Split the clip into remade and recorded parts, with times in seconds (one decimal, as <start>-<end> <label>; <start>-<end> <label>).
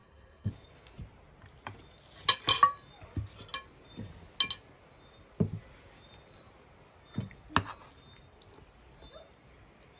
0.0-0.5 remade; 0.5-10.0 recorded